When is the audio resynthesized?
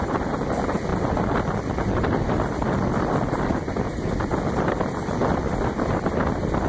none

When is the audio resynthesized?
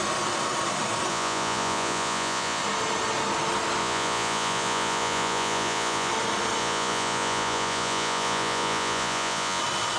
1.1-2.6 (vocoder, Vocos); 3.8-6.1; 6.6-9.6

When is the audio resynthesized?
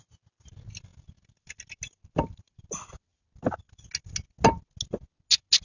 none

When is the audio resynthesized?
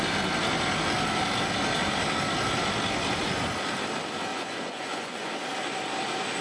4.3-5.3 (vocoder, Vocos)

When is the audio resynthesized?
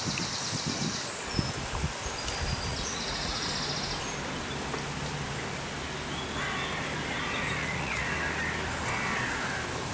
2.7-3.5 (vocoder, Vocos); 7.6-8.1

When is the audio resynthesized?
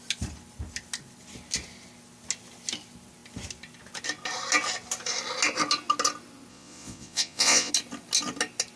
6.5-7.7 (vocoder, Vocos)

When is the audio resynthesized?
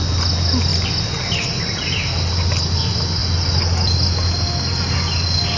none